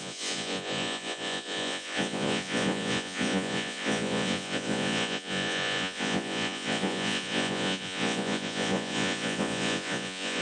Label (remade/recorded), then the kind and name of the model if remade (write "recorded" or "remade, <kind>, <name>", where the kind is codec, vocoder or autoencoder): remade, vocoder, Vocos